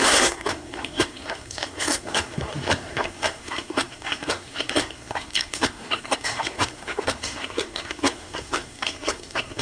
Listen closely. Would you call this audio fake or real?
fake